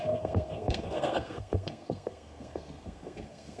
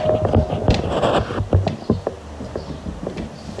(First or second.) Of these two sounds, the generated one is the first